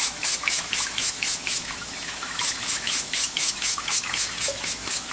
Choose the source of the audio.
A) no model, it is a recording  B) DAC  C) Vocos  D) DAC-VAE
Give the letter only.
D